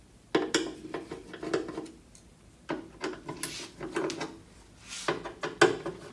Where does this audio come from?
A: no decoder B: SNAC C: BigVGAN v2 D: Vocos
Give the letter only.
A